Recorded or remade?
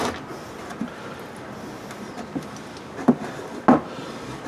recorded